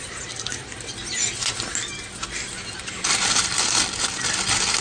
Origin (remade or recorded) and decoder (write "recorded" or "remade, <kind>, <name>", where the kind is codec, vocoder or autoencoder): recorded